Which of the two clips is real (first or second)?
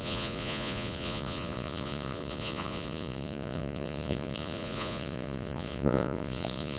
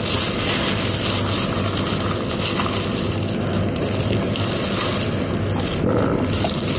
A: second